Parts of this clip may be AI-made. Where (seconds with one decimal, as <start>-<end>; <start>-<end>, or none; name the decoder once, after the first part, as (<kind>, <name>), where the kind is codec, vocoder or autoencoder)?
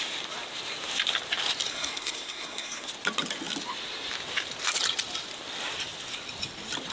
1.7-2.9 (codec, SNAC)